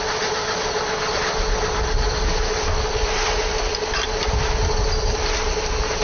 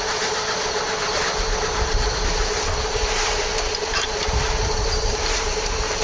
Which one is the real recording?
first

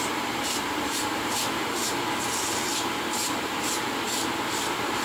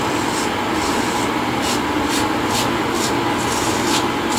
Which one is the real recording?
second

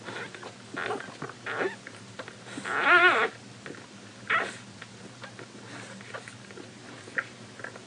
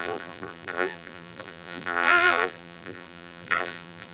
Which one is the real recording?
first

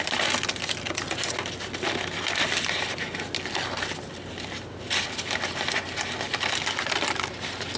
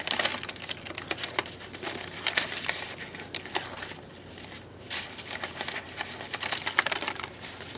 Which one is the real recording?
first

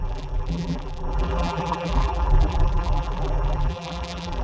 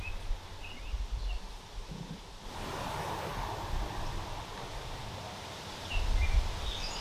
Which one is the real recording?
second